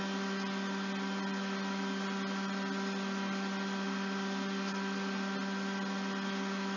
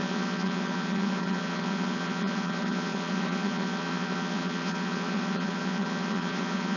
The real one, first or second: first